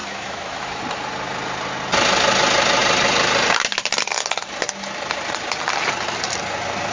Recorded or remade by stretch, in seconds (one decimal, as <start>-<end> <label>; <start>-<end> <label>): 0.0-0.8 remade; 0.8-6.9 recorded